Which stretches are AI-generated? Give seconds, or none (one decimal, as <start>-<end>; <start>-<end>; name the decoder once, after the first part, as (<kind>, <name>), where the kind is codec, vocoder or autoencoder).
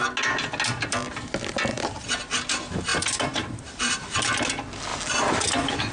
2.9-4.4 (vocoder, BigVGAN v2)